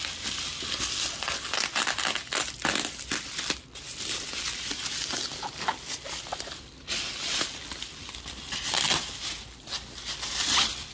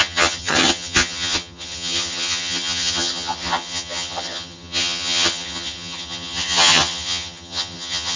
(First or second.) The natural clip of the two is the first